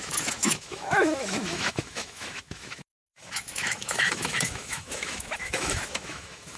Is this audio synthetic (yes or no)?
yes